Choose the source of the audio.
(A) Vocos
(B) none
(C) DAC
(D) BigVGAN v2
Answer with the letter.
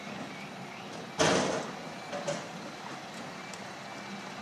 B